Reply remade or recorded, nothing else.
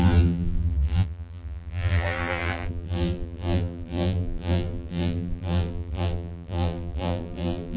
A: remade